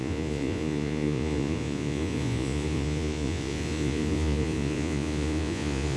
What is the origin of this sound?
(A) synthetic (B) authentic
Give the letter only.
A